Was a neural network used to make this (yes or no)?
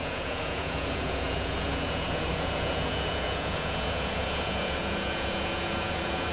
yes